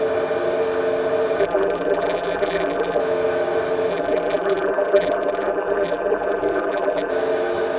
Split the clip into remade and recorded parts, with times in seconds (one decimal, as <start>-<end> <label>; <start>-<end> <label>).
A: 0.0-1.4 recorded; 1.4-3.0 remade; 3.0-3.9 recorded; 3.9-7.1 remade; 7.1-7.8 recorded